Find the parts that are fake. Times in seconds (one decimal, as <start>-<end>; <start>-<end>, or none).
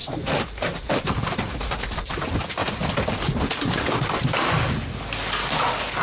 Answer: 0.0-1.5